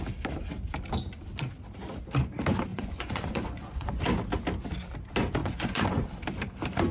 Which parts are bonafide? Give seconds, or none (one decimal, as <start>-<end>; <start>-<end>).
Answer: 0.0-2.7; 4.0-5.4; 6.1-6.9